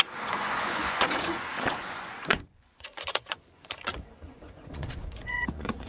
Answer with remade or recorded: remade